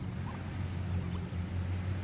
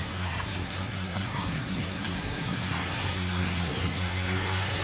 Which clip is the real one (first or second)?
first